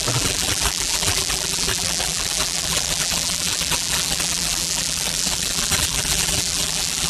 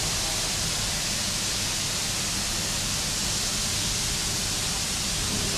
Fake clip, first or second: first